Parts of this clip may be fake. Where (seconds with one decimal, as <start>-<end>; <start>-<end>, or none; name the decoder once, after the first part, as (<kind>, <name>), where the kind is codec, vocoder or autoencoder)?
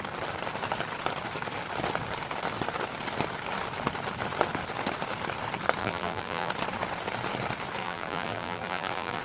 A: 5.8-6.5 (vocoder, BigVGAN v2); 7.8-9.2